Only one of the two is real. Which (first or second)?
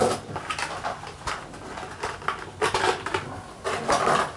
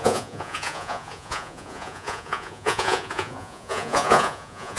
first